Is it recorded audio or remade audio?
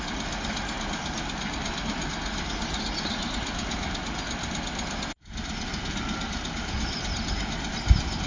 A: recorded